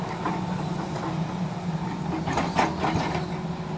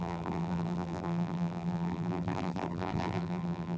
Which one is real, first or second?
first